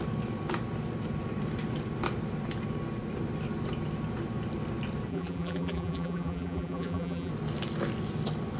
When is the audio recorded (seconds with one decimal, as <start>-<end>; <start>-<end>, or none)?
0.0-5.1; 7.3-8.6